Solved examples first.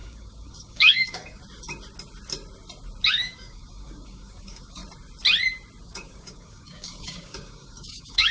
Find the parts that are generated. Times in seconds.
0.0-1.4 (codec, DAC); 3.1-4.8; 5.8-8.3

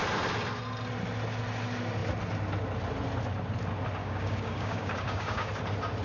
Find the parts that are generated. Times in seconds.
4.0-5.5 (codec, DAC)

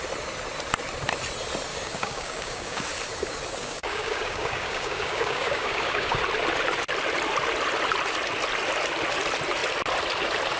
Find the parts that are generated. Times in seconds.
1.7-2.8 (codec, DAC); 3.6-6.2

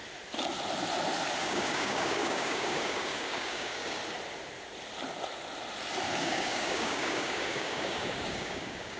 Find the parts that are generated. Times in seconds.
1.4-4.0 (codec, DAC); 6.2-9.0

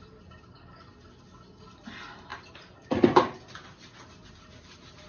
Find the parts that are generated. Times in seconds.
none

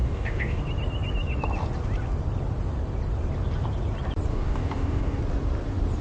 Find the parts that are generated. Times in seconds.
0.0-0.6 (codec, DAC); 4.3-5.2